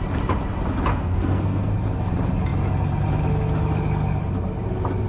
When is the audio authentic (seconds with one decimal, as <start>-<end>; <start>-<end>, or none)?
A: 0.0-0.9; 1.7-5.1